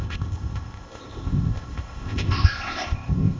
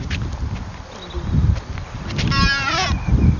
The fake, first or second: first